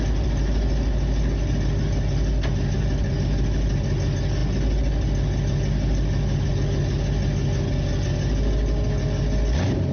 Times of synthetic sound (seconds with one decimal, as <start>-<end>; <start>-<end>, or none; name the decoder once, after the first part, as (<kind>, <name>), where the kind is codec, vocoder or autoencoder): none